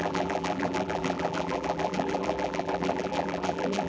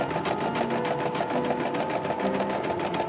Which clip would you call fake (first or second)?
first